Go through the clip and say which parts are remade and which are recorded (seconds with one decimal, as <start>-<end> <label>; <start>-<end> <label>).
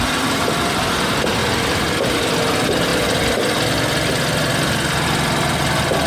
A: 0.0-1.4 recorded; 1.4-2.3 remade; 2.3-6.1 recorded